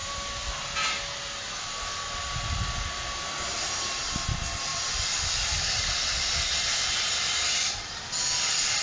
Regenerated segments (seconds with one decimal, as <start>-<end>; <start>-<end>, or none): 0.0-0.6; 4.7-8.0